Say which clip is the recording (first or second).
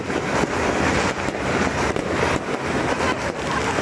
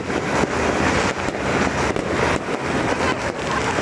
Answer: second